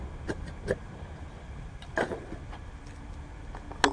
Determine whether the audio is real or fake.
real